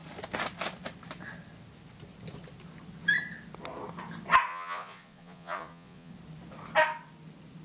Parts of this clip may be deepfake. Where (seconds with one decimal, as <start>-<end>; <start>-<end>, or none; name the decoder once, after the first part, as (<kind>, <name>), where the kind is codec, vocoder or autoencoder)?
4.5-6.1 (vocoder, Vocos)